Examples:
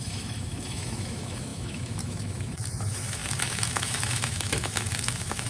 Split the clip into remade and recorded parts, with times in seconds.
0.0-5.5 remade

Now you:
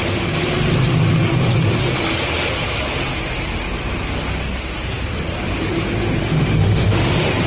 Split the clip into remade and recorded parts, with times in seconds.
0.0-6.2 recorded; 6.2-7.1 remade; 7.1-7.5 recorded

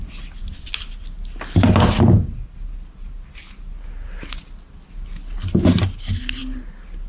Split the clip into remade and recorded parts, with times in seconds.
0.0-7.1 recorded

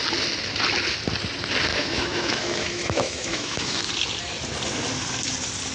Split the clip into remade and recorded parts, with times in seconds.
0.0-1.7 recorded; 1.7-3.9 remade; 3.9-5.7 recorded

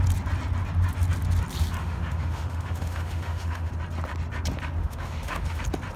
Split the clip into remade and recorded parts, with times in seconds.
0.0-1.8 recorded; 1.8-3.7 remade; 3.7-4.8 recorded; 4.8-5.6 remade; 5.6-6.0 recorded

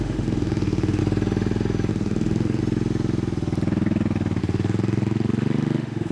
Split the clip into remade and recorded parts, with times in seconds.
0.0-1.0 remade; 1.0-1.9 recorded; 1.9-2.6 remade; 2.6-4.4 recorded; 4.4-6.1 remade